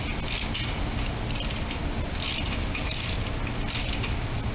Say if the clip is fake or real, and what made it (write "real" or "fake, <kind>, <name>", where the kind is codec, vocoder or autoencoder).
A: real